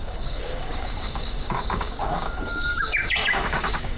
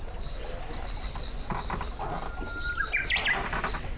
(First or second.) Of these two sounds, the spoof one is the first